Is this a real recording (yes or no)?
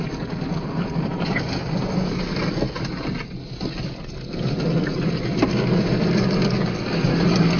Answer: yes